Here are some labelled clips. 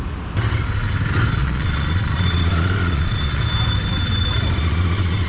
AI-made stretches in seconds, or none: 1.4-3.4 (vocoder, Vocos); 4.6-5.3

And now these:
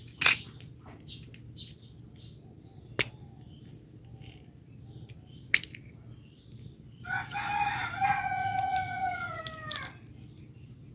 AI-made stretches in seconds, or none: 7.8-9.4 (vocoder, Vocos)

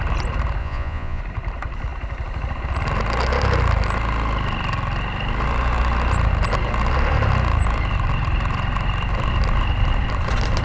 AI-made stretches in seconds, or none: 0.6-1.2 (vocoder, Vocos)

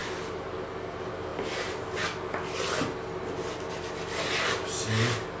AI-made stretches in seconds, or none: none

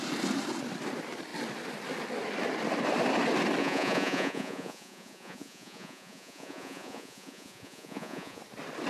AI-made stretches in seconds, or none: 3.6-8.4 (vocoder, Vocos)

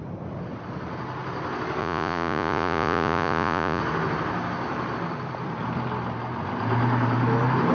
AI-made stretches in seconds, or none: 1.8-3.8 (vocoder, Vocos)

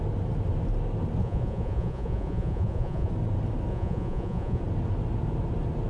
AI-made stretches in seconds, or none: 1.2-3.1 (vocoder, Vocos); 3.7-4.6